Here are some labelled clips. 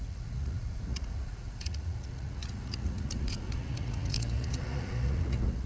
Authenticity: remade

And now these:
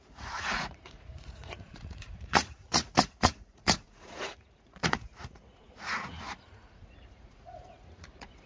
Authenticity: remade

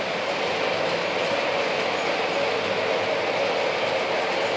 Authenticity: recorded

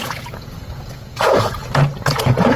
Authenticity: remade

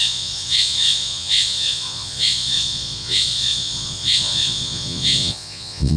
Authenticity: remade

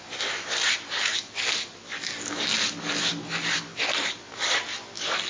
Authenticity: recorded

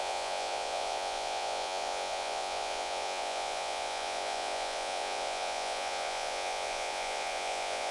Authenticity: remade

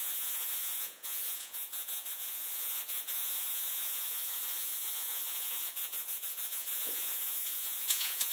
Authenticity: remade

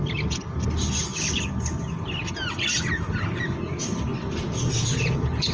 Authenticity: recorded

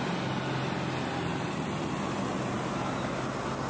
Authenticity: recorded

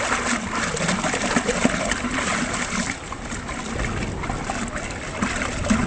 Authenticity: recorded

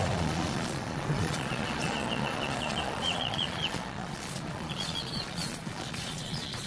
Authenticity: remade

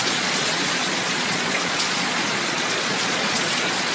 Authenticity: remade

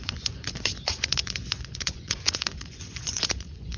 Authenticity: remade